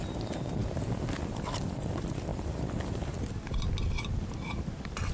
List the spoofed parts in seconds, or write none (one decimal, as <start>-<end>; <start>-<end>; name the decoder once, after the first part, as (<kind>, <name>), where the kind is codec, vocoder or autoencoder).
none